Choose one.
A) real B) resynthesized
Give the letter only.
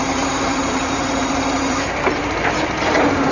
B